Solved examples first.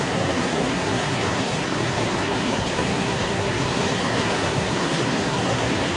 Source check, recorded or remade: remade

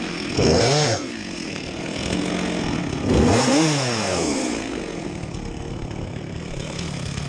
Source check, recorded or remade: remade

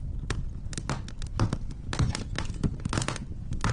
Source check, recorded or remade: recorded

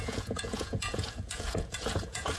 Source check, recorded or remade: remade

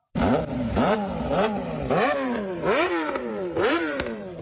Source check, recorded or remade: remade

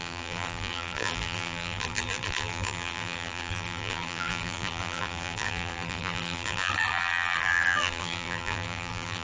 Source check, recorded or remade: remade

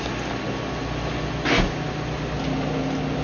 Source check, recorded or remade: recorded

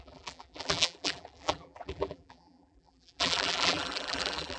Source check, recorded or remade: remade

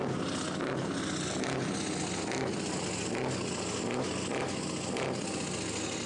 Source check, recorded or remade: recorded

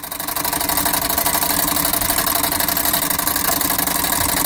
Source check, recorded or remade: recorded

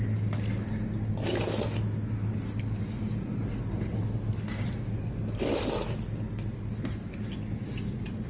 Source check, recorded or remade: recorded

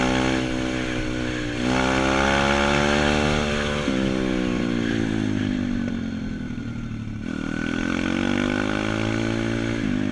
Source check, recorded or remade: recorded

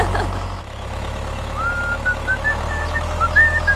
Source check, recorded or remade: remade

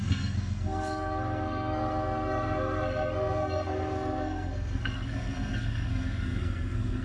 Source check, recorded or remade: remade